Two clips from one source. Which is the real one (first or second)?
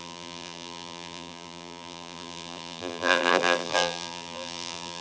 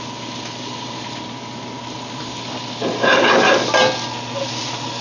second